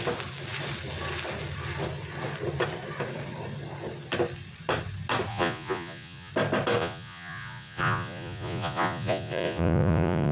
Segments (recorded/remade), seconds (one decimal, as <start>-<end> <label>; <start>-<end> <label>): 0.0-5.3 recorded; 5.3-6.3 remade; 6.3-6.8 recorded; 6.8-10.3 remade